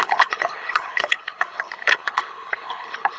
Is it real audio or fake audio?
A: fake